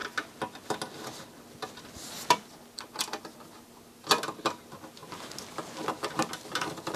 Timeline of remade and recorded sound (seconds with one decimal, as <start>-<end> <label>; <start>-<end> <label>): 0.0-7.0 recorded